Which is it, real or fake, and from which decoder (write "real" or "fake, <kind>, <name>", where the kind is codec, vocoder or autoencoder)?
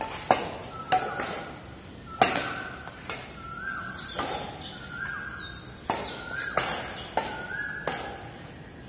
real